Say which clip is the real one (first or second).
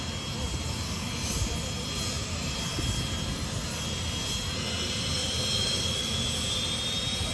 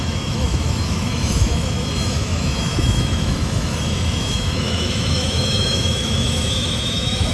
first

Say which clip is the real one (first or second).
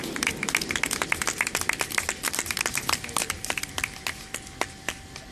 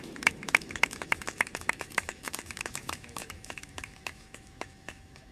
first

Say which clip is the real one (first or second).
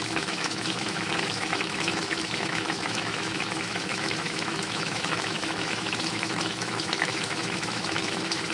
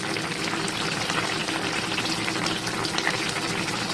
second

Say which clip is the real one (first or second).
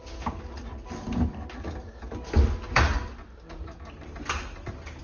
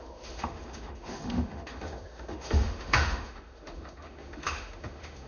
first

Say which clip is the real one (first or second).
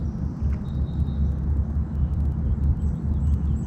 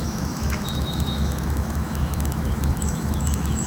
first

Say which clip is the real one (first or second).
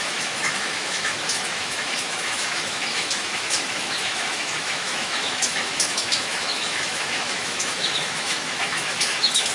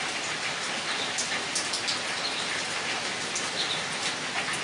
second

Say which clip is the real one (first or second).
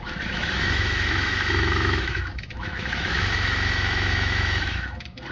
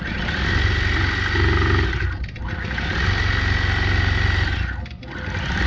second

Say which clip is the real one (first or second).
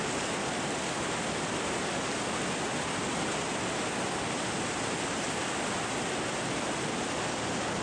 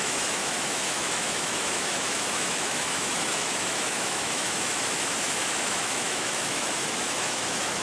first